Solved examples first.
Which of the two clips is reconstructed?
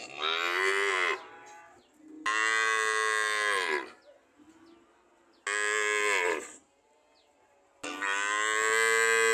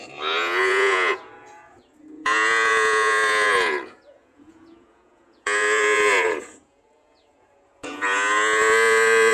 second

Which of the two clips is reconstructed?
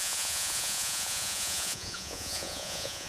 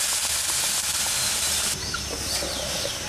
first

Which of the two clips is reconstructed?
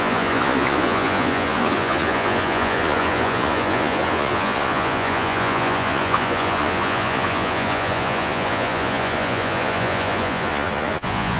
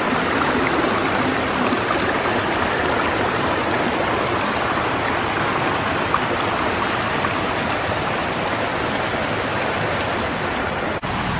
first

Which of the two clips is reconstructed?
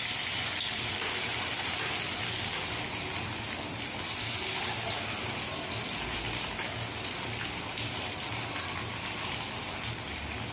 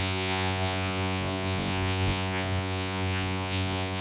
second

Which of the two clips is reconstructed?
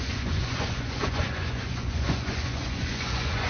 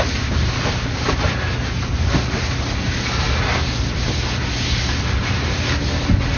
first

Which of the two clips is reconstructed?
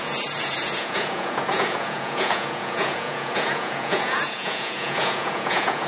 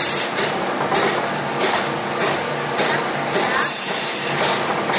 first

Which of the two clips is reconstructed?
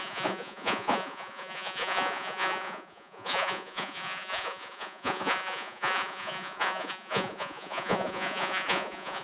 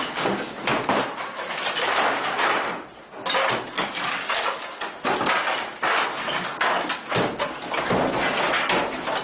first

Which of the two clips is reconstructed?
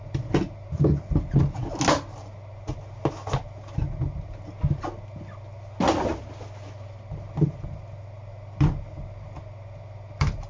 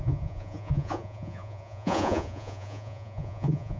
second